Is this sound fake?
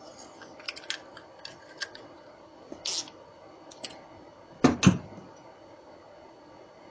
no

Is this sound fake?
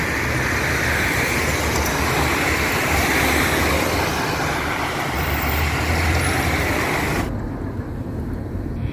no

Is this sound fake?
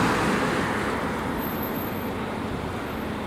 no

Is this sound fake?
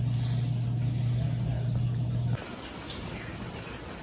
no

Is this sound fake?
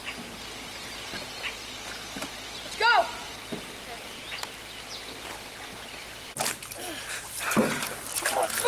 no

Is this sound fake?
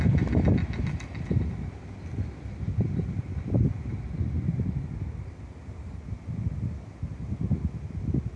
no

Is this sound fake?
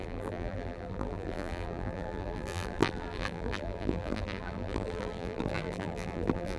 yes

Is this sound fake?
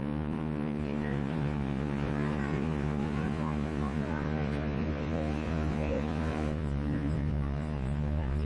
yes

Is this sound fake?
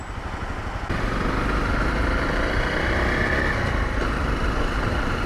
no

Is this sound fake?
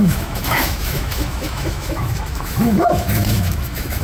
yes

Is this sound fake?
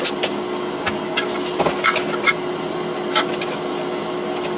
no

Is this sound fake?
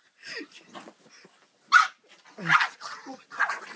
no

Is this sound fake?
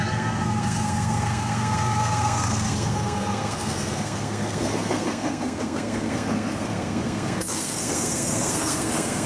yes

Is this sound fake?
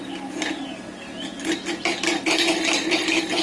no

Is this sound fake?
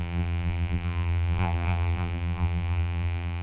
yes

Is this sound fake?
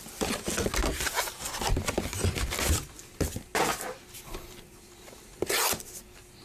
no